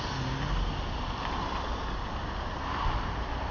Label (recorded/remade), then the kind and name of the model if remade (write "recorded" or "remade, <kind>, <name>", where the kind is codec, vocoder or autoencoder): recorded